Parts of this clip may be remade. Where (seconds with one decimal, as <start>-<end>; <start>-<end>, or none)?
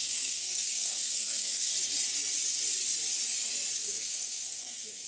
0.0-1.7; 3.7-5.1